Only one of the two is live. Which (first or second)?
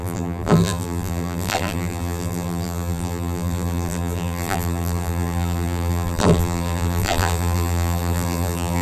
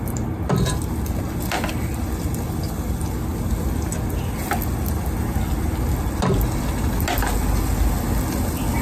second